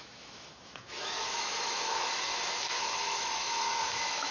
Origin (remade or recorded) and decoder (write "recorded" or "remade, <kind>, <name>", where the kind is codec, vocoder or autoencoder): remade, autoencoder, DAC-VAE